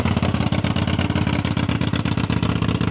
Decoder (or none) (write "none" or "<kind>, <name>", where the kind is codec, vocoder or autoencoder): none